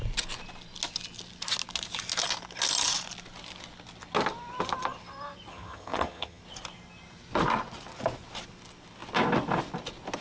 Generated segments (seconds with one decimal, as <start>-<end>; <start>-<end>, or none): 5.5-6.4